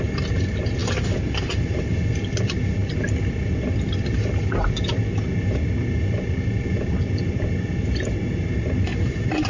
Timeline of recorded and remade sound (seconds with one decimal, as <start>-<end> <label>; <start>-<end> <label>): 0.0-0.8 recorded; 0.8-1.8 remade; 1.8-2.8 recorded; 2.8-3.9 remade; 3.9-8.9 recorded; 8.9-9.5 remade